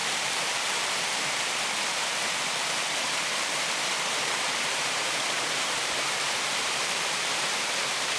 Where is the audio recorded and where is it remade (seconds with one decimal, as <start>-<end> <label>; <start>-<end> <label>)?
0.0-1.0 recorded; 1.0-2.0 remade; 2.0-3.3 recorded; 3.3-8.2 remade